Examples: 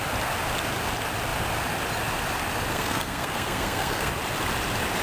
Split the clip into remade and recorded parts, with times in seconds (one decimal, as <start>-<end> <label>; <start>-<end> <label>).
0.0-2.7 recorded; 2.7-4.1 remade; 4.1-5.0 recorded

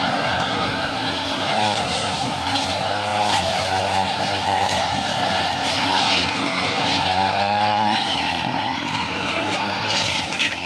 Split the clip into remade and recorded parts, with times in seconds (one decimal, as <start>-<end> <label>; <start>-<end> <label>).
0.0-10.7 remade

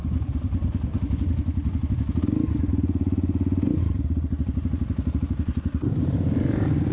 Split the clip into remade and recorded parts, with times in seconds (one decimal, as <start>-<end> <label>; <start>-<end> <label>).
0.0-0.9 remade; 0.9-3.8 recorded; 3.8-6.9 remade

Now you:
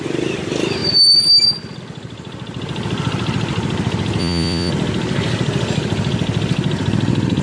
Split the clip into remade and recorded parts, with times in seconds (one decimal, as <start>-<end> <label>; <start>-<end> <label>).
0.0-4.2 recorded; 4.2-4.7 remade; 4.7-7.4 recorded

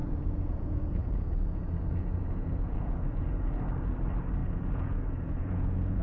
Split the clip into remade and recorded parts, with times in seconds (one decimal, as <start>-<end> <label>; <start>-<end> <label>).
0.0-3.6 remade; 3.6-4.4 recorded; 4.4-6.0 remade

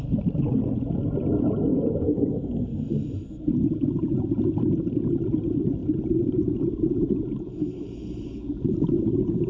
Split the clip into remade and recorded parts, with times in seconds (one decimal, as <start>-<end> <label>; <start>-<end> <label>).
0.0-1.7 recorded; 1.7-2.5 remade; 2.5-5.8 recorded; 5.8-6.7 remade; 6.7-9.5 recorded